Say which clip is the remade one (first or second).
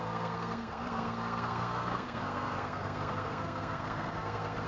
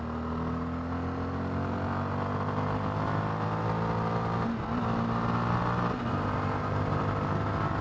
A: first